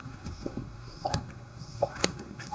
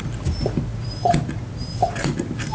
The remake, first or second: first